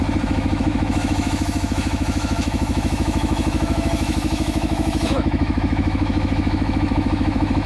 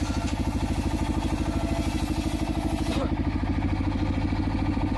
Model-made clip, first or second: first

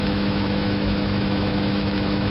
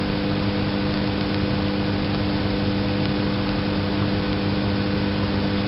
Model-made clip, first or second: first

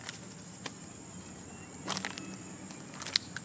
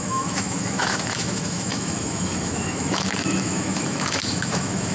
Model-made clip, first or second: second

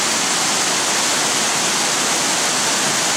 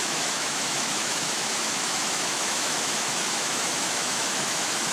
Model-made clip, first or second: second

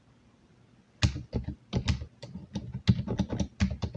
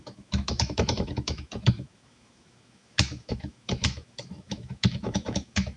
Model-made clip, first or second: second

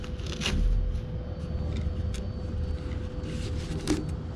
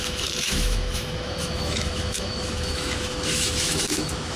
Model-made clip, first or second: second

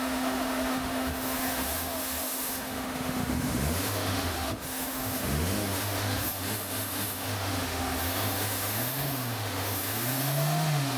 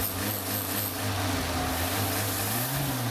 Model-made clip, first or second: first